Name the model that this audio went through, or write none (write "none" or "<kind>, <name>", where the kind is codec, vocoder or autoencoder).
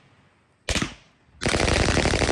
none